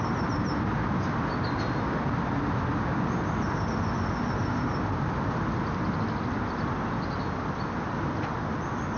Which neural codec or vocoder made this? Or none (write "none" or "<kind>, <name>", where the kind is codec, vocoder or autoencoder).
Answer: none